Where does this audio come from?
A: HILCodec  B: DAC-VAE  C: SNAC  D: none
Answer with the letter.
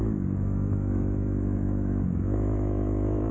B